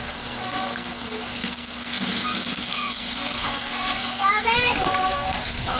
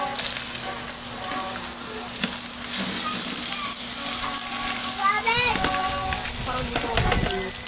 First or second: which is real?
second